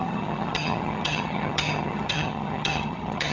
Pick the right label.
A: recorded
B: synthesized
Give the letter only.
B